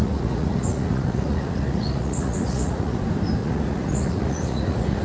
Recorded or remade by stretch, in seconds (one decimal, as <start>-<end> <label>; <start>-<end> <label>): 0.0-3.0 remade; 3.0-3.4 recorded; 3.4-5.0 remade